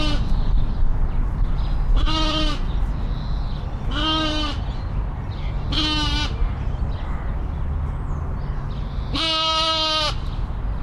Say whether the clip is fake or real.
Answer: real